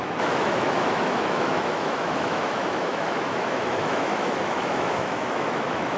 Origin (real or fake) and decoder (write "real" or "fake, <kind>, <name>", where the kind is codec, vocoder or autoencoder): fake, autoencoder, DAC-VAE